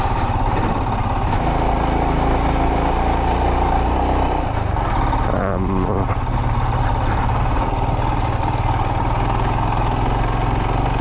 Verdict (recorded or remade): recorded